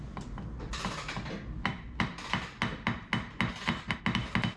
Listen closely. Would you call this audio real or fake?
real